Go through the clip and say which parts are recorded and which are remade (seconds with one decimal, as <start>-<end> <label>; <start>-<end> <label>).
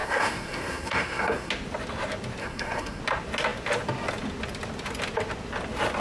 0.0-1.5 remade; 1.5-2.4 recorded; 2.4-3.0 remade; 3.0-6.0 recorded